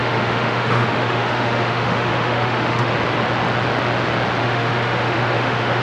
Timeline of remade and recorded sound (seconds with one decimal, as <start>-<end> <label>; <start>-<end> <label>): 0.0-2.9 remade; 2.9-4.4 recorded; 4.4-5.8 remade